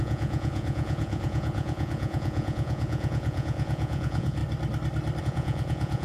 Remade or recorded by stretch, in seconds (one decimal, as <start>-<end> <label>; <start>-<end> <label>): 0.0-4.4 remade; 4.4-5.2 recorded; 5.2-6.0 remade

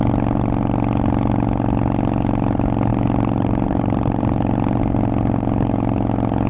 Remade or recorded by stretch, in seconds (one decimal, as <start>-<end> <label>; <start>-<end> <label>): 0.0-2.9 recorded; 2.9-4.8 remade; 4.8-6.5 recorded

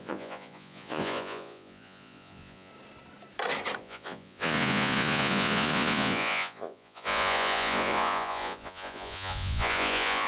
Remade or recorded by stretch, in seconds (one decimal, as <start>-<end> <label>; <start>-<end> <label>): 0.0-2.7 remade; 2.7-3.8 recorded; 3.8-10.3 remade

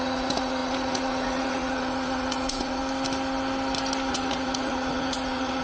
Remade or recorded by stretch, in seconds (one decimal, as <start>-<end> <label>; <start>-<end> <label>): 0.0-2.8 remade; 2.8-4.1 recorded; 4.1-5.6 remade